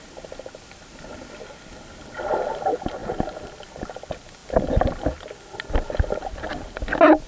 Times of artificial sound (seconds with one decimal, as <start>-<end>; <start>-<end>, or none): 3.0-4.0